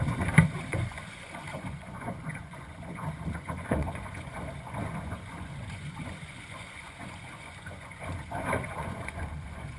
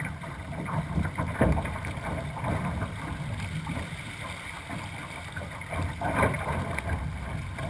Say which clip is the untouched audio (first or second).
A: second